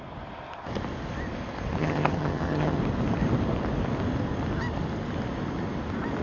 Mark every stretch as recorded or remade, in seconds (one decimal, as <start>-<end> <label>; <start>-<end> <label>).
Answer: 0.0-1.8 recorded; 1.8-2.8 remade; 2.8-6.2 recorded

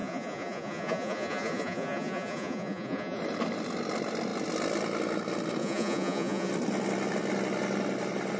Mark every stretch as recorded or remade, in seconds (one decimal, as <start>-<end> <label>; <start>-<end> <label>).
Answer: 0.0-3.2 remade; 3.2-5.6 recorded; 5.6-6.5 remade; 6.5-8.4 recorded

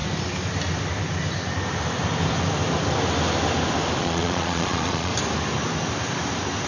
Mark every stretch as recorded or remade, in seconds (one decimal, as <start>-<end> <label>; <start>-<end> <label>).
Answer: 0.0-4.0 recorded; 4.0-5.1 remade; 5.1-6.7 recorded

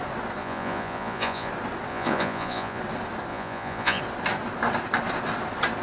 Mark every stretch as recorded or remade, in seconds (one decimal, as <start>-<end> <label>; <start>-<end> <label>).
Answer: 0.0-0.4 recorded; 0.4-1.5 remade; 1.5-1.9 recorded; 1.9-2.8 remade; 2.8-3.3 recorded; 3.3-4.0 remade; 4.0-5.8 recorded